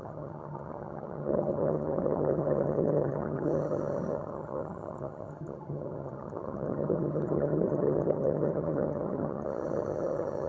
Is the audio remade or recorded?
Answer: remade